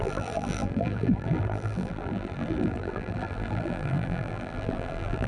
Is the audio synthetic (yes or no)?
yes